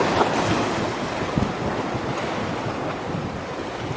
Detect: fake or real real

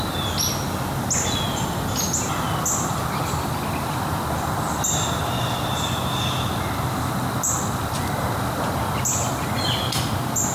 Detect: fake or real real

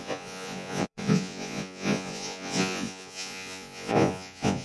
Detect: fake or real fake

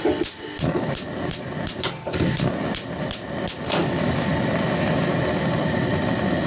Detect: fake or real real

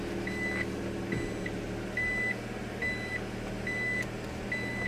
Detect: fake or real real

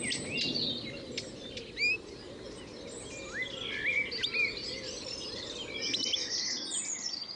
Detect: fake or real real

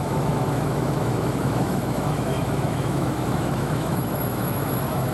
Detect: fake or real fake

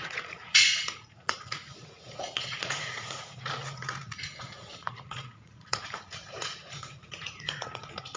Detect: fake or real fake